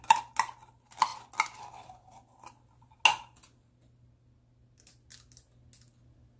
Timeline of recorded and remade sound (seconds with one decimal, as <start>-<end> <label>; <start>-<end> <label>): 0.0-6.4 recorded